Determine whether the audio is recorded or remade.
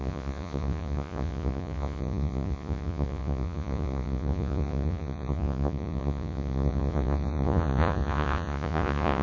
remade